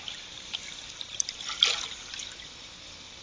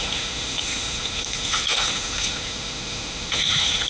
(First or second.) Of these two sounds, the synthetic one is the second